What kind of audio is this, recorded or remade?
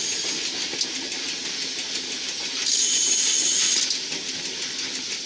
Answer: recorded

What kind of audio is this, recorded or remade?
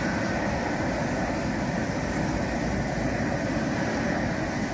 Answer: recorded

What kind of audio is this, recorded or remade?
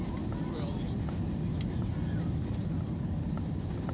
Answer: recorded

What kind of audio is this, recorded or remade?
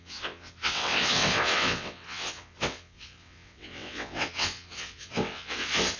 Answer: remade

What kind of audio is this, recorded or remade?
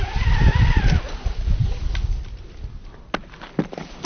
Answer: recorded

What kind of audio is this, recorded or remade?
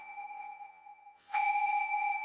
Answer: remade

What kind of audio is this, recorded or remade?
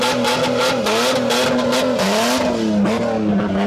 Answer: recorded